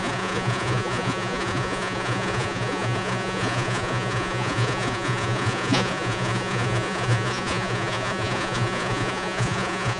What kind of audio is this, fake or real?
fake